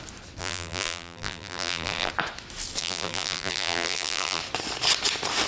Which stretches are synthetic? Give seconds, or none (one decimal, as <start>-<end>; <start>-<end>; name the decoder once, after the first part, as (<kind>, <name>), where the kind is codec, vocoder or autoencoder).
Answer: 0.4-2.1 (vocoder, BigVGAN v2); 2.8-4.4

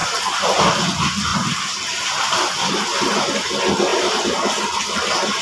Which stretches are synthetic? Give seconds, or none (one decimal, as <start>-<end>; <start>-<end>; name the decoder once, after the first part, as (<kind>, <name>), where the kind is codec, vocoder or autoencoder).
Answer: 0.0-0.6 (vocoder, BigVGAN v2); 1.3-2.5; 3.9-4.4

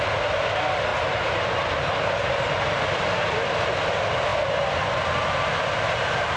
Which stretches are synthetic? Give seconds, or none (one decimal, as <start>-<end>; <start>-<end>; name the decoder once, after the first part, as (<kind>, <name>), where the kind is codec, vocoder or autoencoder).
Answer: 0.9-1.5 (vocoder, BigVGAN v2)

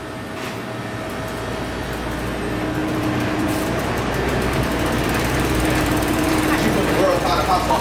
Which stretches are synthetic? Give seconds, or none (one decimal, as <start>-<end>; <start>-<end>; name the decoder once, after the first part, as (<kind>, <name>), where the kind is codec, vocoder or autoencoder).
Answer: 2.8-7.8 (vocoder, BigVGAN v2)

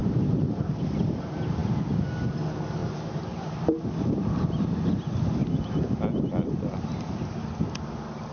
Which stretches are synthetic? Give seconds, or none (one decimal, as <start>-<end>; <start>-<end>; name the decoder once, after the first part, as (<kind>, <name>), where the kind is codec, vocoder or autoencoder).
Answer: 0.0-0.8 (vocoder, BigVGAN v2); 2.8-3.8

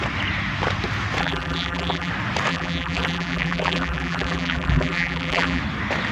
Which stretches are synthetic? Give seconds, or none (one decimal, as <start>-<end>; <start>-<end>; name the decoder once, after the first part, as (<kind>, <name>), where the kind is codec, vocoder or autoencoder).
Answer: 1.2-2.1 (vocoder, BigVGAN v2); 2.5-5.6

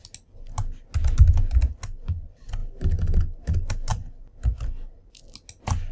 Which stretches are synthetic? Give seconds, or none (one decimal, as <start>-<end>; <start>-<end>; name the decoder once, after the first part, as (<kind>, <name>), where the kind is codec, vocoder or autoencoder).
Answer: none

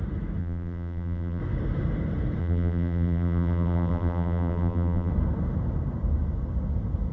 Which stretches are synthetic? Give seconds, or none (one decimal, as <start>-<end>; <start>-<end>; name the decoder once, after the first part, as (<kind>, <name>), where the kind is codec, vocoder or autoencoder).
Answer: 0.4-1.4 (vocoder, BigVGAN v2); 2.4-5.1